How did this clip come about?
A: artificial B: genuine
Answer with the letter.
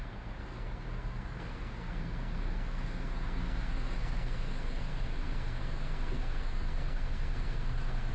A